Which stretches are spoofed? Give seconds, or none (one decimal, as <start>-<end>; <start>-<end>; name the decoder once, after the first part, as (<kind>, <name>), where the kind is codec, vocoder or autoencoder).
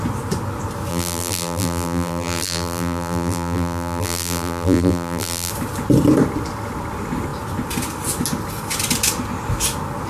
0.9-5.5 (vocoder, BigVGAN v2)